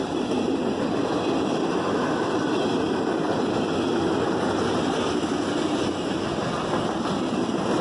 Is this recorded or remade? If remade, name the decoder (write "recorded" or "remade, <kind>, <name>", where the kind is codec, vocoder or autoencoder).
recorded